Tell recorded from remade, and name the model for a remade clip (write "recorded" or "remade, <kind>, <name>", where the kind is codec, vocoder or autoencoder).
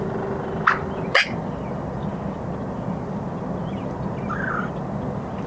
recorded